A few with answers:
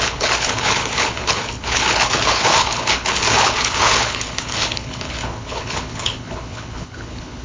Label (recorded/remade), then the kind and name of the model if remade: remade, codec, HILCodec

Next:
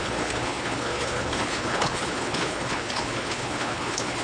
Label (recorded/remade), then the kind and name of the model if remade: remade, codec, HILCodec